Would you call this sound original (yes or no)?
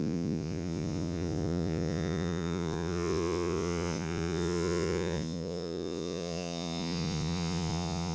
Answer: no